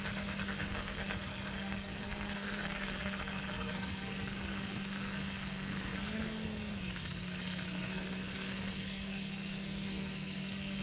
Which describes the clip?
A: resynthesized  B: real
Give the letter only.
A